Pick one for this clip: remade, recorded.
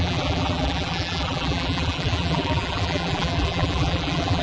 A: remade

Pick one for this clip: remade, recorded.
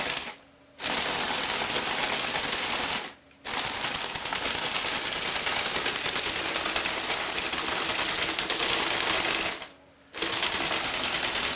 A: recorded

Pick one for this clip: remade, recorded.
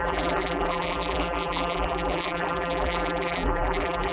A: remade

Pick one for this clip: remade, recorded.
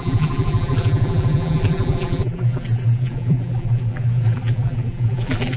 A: remade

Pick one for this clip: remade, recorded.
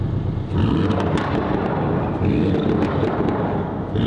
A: recorded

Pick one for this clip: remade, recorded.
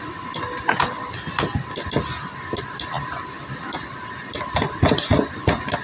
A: recorded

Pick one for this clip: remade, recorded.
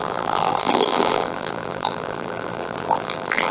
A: remade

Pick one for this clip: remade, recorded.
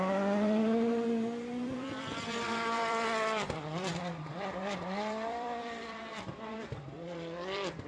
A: remade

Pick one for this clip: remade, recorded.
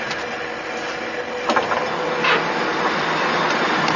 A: remade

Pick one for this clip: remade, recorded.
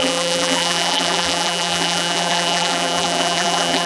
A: remade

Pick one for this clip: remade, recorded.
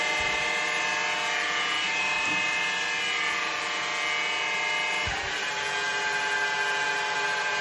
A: recorded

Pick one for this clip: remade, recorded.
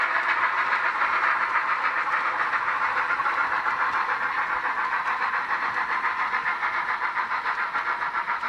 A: recorded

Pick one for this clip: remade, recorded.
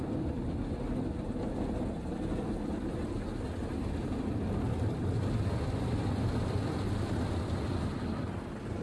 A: recorded